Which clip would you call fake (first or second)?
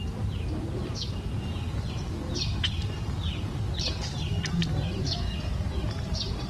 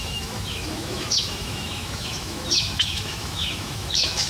second